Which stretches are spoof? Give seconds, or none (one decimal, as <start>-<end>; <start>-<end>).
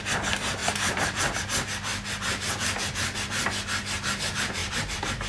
0.6-1.2; 1.9-2.6; 4.6-5.3